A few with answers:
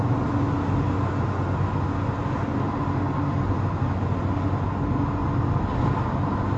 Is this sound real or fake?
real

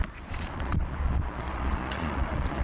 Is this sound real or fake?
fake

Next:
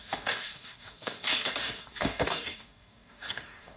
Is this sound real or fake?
fake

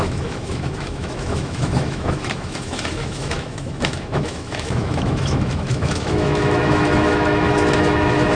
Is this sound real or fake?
fake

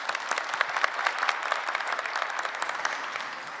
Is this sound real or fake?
real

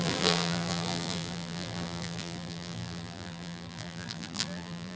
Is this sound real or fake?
fake